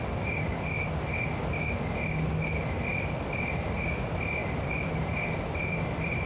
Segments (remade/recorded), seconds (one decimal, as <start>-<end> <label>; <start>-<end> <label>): 0.0-4.4 recorded; 4.4-6.3 remade